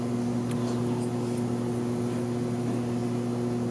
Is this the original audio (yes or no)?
yes